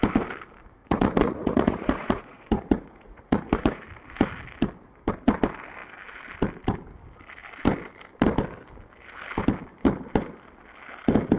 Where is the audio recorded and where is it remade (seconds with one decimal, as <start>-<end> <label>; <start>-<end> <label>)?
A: 0.0-0.8 recorded; 0.8-3.8 remade; 3.8-11.4 recorded